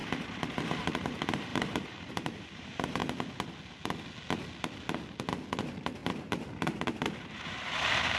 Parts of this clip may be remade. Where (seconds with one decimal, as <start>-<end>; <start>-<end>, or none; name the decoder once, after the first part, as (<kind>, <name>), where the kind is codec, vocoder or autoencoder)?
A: 0.0-3.0 (vocoder, BigVGAN v2); 5.6-8.2